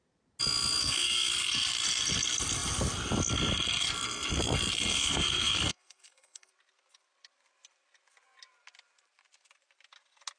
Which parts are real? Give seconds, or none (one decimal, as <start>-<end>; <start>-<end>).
0.0-0.8; 1.3-4.9; 6.5-10.4